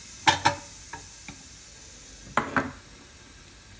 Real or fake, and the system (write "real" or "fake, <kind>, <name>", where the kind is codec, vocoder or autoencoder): real